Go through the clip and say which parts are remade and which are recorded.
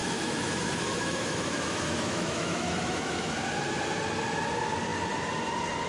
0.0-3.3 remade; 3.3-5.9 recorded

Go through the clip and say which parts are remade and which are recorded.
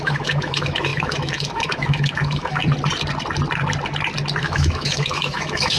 0.0-2.6 remade; 2.6-4.4 recorded; 4.4-5.8 remade